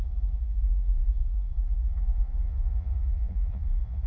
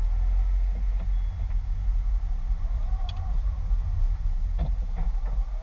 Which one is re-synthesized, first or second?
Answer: first